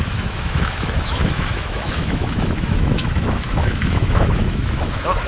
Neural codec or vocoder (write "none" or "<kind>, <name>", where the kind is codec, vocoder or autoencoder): autoencoder, DAC-VAE